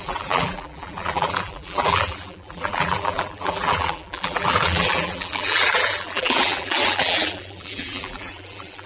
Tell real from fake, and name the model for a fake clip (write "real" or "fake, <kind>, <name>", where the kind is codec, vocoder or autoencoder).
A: fake, vocoder, BigVGAN v2